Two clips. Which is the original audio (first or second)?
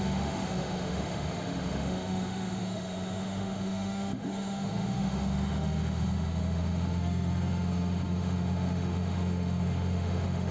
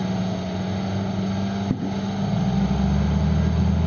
second